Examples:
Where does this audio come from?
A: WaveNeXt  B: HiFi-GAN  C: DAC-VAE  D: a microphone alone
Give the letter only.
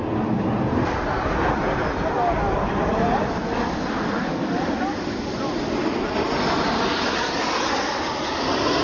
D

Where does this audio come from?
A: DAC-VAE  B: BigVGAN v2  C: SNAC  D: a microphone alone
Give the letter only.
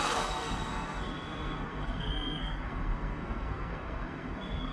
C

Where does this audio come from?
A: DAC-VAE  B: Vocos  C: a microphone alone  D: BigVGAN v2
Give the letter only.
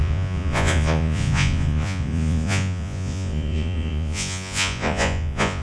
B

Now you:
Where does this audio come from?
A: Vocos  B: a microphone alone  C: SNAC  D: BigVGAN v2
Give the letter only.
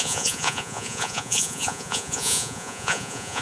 A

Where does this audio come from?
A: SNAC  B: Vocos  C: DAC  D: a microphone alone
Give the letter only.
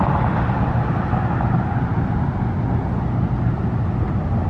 D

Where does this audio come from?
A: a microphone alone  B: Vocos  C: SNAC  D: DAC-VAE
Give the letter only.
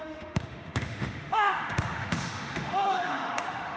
D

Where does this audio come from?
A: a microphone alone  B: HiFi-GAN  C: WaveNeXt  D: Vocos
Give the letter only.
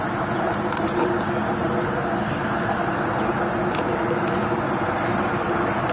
A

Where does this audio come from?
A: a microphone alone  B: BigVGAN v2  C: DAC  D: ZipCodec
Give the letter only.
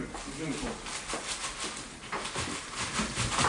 A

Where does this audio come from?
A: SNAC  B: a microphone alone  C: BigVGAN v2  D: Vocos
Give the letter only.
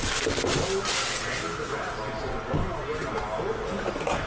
B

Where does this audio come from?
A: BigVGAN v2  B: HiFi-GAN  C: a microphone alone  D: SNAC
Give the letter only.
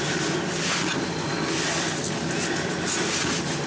C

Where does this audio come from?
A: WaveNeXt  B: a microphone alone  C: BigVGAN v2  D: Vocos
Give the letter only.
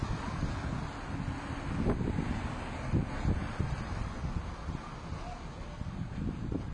B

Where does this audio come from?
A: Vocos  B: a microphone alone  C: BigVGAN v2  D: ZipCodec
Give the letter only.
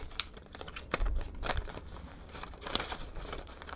C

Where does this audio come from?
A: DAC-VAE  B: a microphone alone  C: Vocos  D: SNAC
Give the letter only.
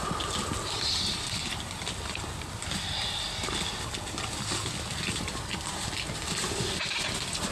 B